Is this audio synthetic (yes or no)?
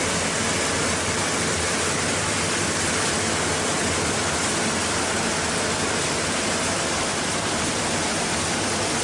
no